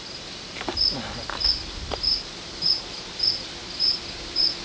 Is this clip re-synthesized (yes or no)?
no